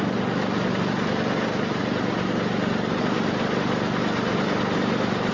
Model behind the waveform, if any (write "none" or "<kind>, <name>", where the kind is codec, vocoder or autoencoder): none